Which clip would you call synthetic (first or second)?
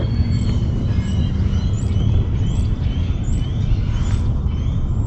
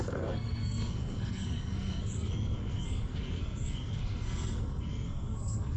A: second